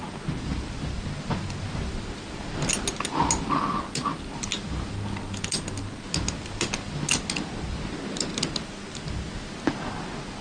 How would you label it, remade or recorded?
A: recorded